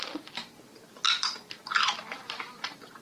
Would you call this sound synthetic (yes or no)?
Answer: no